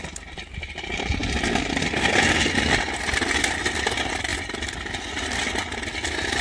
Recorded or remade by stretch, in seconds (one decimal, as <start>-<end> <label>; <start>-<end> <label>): 0.0-6.4 recorded